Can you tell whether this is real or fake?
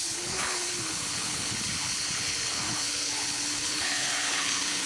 fake